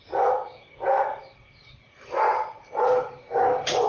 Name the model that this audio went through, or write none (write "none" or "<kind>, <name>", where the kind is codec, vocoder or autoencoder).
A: none